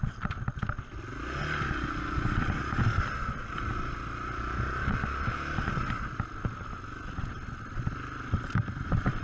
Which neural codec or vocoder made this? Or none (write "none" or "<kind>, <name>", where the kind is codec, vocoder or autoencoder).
none